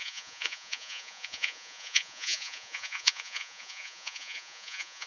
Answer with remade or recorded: remade